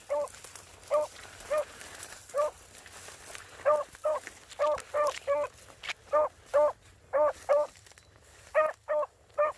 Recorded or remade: recorded